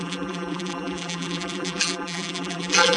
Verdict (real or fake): fake